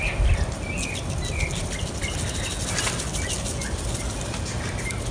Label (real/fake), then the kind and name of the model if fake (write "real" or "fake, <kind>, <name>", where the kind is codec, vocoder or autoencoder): real